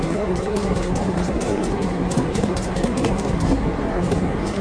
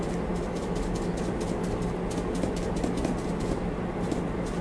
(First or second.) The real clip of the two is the second